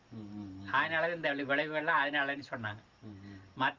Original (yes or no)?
yes